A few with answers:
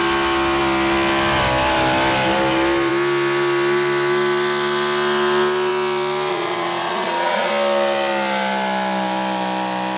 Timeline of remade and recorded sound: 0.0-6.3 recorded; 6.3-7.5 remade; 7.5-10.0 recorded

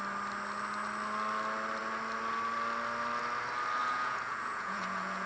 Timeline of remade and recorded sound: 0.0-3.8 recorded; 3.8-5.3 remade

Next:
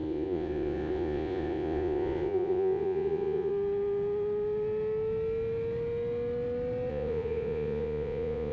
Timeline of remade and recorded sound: 0.0-3.5 remade; 3.5-6.9 recorded; 6.9-8.5 remade

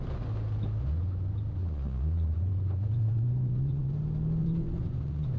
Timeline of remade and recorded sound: 0.0-1.6 recorded; 1.6-3.9 remade; 3.9-4.4 recorded; 4.4-5.4 remade

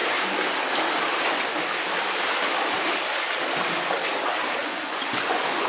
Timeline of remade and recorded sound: 0.0-4.6 recorded; 4.6-5.7 remade

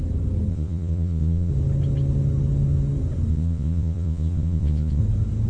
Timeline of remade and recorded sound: 0.0-0.5 recorded; 0.5-1.5 remade; 1.5-3.3 recorded; 3.3-5.0 remade; 5.0-5.5 recorded

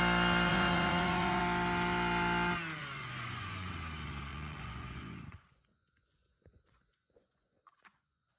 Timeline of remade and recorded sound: 0.0-0.5 recorded; 0.5-1.4 remade; 1.4-2.8 recorded; 2.8-3.7 remade; 3.7-4.3 recorded; 4.3-8.4 remade

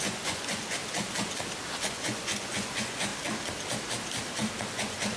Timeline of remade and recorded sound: 0.0-0.8 remade; 0.8-1.8 recorded; 1.8-3.1 remade; 3.1-4.7 recorded; 4.7-5.2 remade